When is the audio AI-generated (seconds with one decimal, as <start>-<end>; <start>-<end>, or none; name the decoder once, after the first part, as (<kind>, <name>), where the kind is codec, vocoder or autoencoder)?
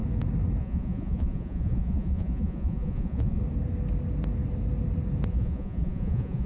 0.6-3.4 (vocoder, Vocos); 5.3-6.5